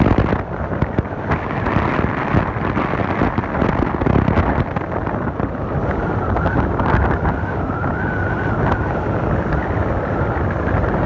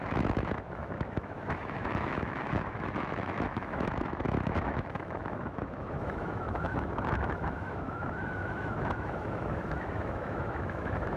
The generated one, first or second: second